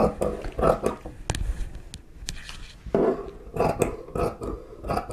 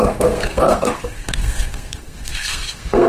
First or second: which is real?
first